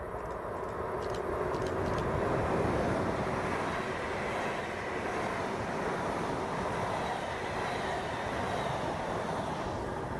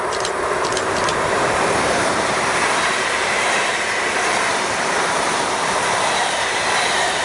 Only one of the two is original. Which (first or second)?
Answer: first